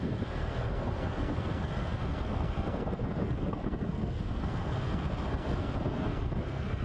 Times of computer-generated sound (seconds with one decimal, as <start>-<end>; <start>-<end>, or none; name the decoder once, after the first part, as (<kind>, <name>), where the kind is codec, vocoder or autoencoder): 0.0-6.8 (codec, SNAC)